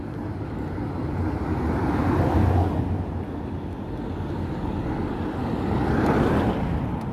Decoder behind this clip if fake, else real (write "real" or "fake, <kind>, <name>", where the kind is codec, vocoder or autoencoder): real